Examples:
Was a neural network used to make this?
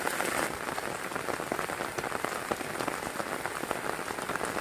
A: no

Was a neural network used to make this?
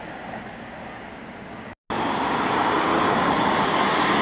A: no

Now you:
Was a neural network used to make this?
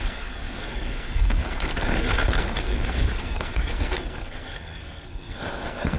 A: yes